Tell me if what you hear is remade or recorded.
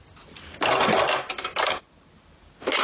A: recorded